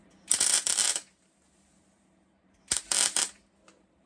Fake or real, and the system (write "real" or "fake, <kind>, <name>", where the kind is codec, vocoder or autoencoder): fake, vocoder, BigVGAN v2